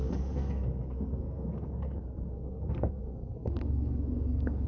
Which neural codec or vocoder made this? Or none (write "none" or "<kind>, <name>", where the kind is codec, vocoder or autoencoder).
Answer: codec, SNAC